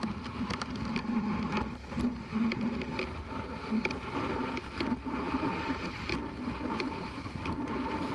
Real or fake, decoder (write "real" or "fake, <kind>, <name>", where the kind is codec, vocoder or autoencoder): real